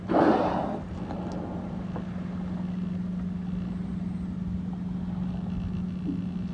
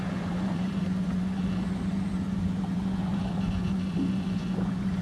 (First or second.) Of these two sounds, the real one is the first